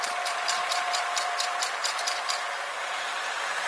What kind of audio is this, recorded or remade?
remade